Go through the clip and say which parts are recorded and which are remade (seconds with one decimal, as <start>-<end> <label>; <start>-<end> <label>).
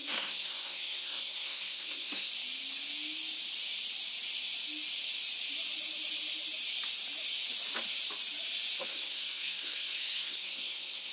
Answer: 0.0-2.3 remade; 2.3-8.9 recorded; 8.9-11.1 remade